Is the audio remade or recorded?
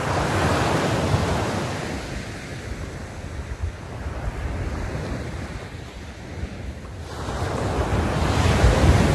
recorded